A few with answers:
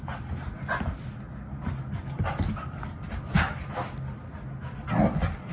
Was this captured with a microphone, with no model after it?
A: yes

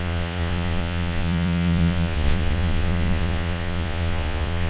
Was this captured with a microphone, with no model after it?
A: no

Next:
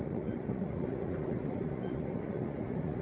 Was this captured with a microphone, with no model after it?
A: no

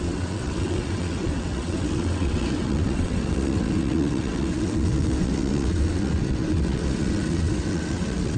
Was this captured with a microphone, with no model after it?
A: no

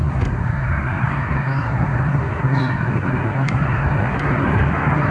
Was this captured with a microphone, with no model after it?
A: no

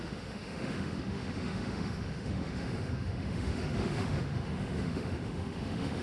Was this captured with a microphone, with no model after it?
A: no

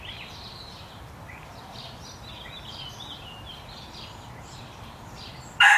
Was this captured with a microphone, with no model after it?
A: no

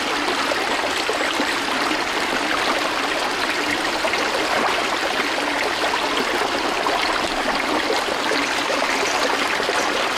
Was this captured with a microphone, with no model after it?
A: yes